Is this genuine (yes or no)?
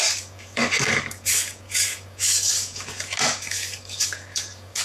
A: no